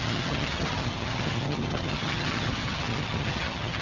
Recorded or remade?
remade